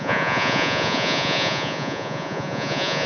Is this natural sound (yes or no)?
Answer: no